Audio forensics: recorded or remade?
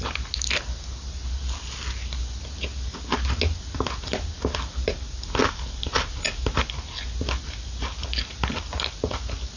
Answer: recorded